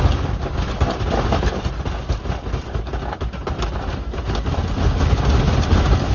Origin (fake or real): real